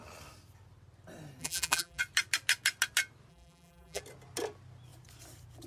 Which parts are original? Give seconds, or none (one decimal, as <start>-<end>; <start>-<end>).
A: 0.0-1.4; 2.0-3.3; 4.0-5.7